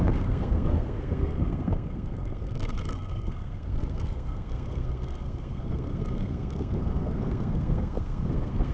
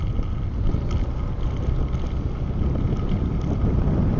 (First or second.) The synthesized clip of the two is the first